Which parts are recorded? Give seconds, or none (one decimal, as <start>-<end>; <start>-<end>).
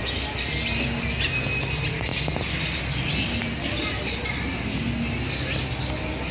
0.0-6.3